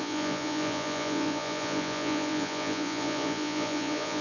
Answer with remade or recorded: remade